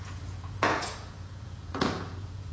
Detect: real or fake fake